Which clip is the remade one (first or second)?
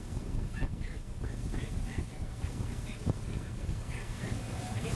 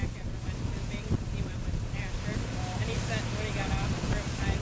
first